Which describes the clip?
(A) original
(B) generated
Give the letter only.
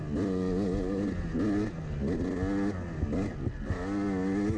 A